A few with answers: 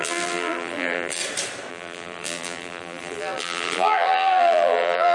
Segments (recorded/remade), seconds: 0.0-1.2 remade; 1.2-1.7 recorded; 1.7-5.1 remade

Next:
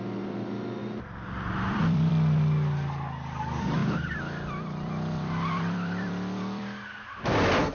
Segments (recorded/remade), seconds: 0.0-0.8 recorded; 0.8-2.1 remade; 2.1-3.8 recorded; 3.8-7.2 remade; 7.2-7.7 recorded

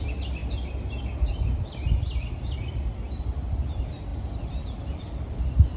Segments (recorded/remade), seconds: 0.0-0.4 remade; 0.4-2.3 recorded; 2.3-5.8 remade

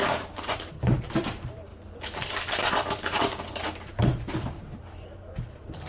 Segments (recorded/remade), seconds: 0.0-5.9 remade